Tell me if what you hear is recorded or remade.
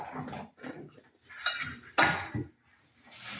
recorded